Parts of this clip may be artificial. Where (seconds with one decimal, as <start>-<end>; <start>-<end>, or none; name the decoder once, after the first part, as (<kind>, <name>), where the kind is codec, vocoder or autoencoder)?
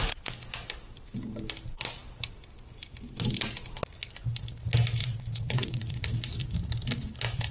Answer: 5.0-6.0 (vocoder, WaveNeXt)